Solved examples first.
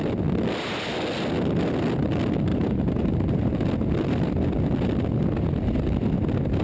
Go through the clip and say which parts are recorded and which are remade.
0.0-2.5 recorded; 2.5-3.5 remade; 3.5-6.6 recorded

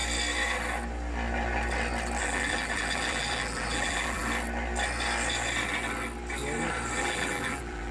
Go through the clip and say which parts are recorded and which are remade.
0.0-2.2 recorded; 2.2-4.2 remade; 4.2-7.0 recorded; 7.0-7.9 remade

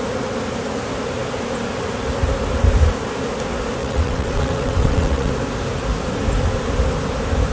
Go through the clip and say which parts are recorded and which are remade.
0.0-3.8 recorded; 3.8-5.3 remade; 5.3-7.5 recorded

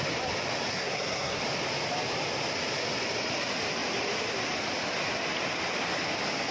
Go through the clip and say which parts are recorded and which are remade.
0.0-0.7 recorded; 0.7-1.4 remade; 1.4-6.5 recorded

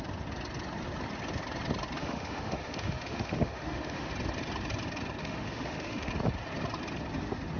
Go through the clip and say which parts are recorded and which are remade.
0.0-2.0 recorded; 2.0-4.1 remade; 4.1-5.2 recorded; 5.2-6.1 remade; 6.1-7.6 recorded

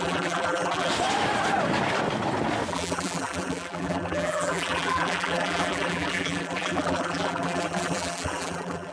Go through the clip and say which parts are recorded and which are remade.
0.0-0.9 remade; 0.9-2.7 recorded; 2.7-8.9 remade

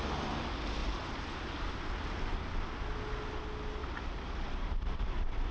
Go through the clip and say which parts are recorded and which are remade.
0.0-0.8 recorded; 0.8-2.0 remade; 2.0-3.8 recorded; 3.8-5.5 remade

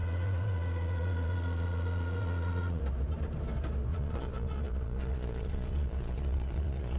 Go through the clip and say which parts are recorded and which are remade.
0.0-2.8 remade; 2.8-3.9 recorded; 3.9-7.0 remade